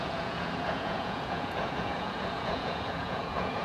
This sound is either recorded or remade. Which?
remade